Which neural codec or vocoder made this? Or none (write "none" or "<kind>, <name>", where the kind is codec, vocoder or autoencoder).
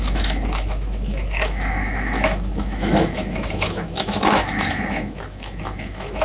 autoencoder, DAC-VAE